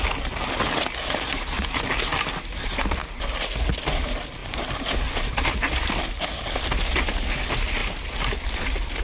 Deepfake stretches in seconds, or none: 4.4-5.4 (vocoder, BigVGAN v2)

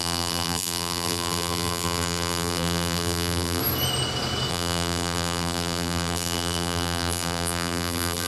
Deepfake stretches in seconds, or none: 0.0-3.6 (vocoder, BigVGAN v2); 4.5-8.3